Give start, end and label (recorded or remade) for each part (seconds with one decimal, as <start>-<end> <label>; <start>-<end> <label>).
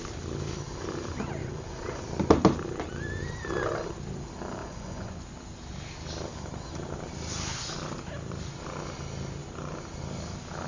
0.0-1.4 recorded; 1.4-2.0 remade; 2.0-4.6 recorded; 4.6-5.2 remade; 5.2-10.7 recorded